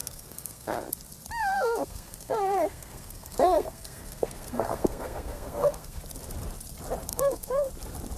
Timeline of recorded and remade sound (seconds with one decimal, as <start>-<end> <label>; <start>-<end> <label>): 0.0-0.9 remade; 0.9-1.4 recorded; 1.4-6.0 remade; 6.0-7.1 recorded; 7.1-7.7 remade; 7.7-8.2 recorded

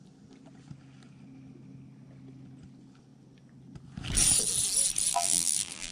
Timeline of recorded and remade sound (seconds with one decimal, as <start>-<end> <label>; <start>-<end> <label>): 0.0-5.1 recorded; 5.1-5.9 remade

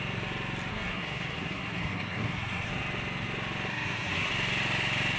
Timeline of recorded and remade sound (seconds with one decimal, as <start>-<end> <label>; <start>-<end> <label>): 0.0-0.7 recorded; 0.7-2.7 remade; 2.7-3.7 recorded; 3.7-4.3 remade; 4.3-5.2 recorded